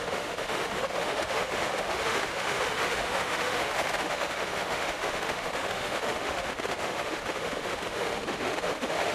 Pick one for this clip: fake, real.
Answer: fake